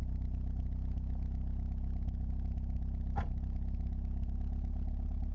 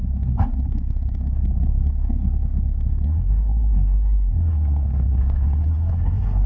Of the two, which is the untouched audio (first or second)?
first